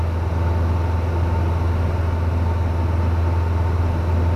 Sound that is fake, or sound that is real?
real